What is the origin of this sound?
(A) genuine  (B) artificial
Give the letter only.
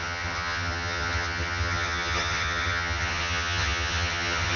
B